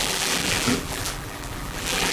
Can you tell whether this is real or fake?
fake